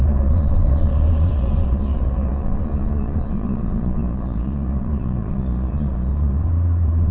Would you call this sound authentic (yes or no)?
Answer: no